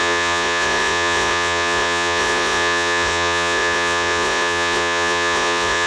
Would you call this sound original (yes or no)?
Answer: no